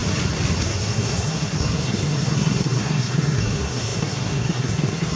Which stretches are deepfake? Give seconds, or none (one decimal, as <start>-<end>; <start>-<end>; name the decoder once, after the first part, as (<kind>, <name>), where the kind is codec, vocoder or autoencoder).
0.6-5.2 (codec, SNAC)